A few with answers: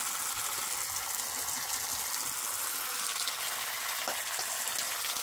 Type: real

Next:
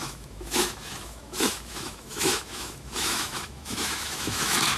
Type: fake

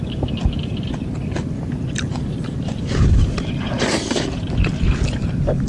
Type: fake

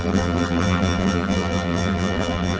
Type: fake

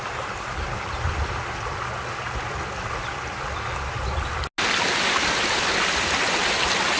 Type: real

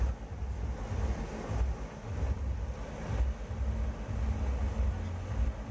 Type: real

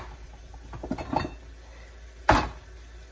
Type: real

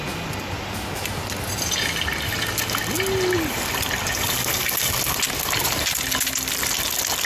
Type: real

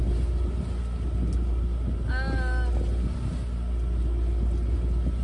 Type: real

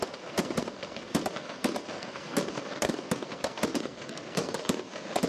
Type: fake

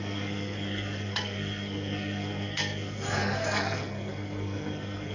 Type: fake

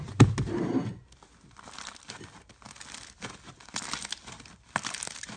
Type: real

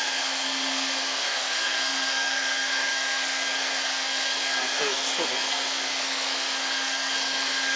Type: fake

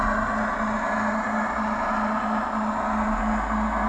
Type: real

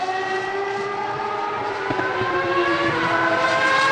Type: fake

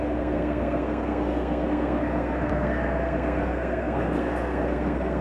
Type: fake